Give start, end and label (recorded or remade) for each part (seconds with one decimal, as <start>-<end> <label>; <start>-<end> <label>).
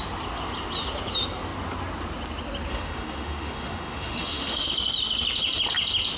0.0-2.7 recorded; 2.7-4.7 remade; 4.7-6.2 recorded